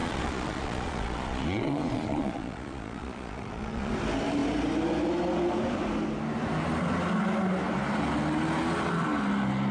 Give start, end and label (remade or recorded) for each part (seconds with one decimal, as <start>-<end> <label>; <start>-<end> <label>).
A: 0.0-3.9 remade; 3.9-9.7 recorded